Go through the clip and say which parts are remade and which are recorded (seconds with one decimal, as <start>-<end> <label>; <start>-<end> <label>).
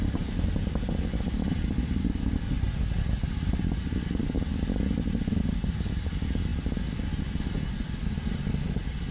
0.0-9.1 recorded